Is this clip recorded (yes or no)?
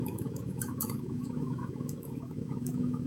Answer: no